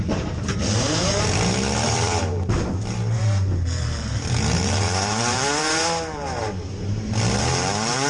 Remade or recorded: remade